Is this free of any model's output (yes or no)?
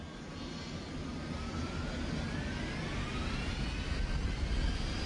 yes